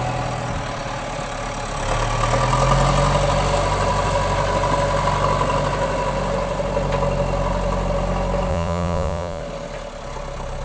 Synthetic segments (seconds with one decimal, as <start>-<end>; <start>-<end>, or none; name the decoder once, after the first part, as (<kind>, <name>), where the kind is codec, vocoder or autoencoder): 8.5-9.4 (vocoder, Vocos)